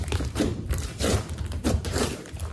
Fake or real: fake